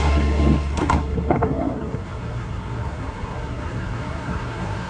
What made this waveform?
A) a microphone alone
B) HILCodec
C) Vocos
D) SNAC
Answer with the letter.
D